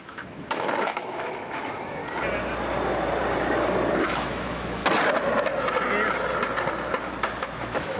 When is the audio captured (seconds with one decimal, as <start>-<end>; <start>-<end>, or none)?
2.0-3.9; 4.8-7.4